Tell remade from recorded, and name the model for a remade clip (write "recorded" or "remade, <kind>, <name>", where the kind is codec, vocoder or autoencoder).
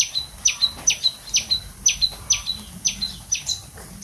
recorded